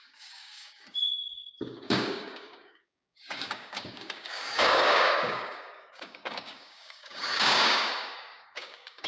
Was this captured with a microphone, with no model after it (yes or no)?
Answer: no